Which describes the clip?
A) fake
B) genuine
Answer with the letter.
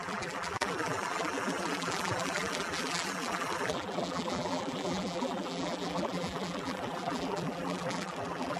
A